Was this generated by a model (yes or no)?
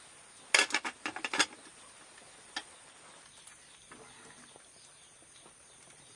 no